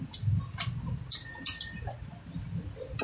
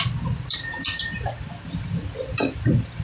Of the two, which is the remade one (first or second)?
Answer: second